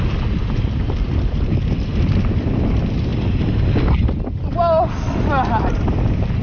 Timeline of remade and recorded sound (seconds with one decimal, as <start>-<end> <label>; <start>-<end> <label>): 0.0-6.4 recorded